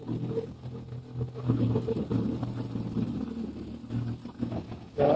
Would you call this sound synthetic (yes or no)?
no